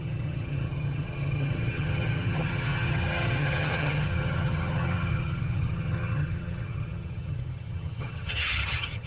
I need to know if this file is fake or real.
fake